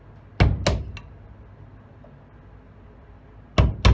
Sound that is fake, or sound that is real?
real